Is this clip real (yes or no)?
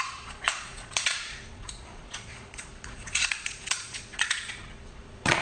no